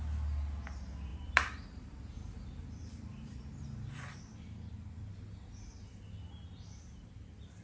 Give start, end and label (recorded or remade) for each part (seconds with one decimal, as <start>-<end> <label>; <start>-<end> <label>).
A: 0.0-1.1 recorded; 1.1-4.1 remade; 4.1-7.6 recorded